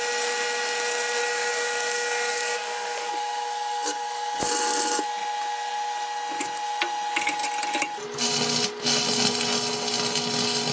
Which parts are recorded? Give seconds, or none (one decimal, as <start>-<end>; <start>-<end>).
0.0-1.2; 4.4-10.7